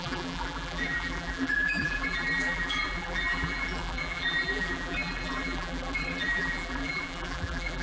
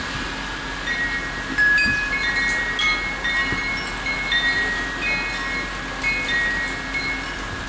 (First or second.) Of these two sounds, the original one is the second